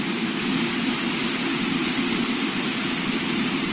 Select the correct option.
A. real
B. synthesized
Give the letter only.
A